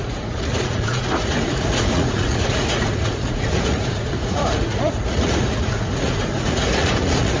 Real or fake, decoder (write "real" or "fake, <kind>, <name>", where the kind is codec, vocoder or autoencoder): fake, vocoder, Vocos